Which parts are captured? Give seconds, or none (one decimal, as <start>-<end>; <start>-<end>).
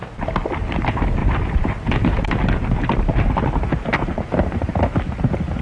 0.0-1.2; 2.3-5.6